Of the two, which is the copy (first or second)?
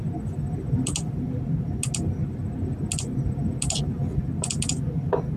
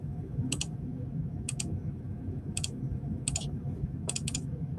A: second